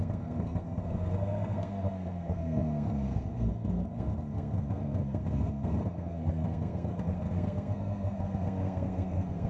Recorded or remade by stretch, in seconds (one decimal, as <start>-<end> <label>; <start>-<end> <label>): 0.0-9.5 remade